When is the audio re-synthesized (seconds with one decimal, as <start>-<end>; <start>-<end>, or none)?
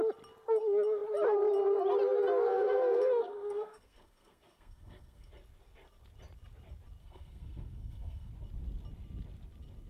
2.5-5.3; 7.0-8.3